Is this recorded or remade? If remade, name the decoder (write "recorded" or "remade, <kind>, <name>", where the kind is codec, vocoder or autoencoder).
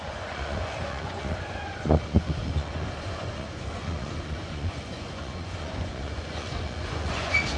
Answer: remade, vocoder, Vocos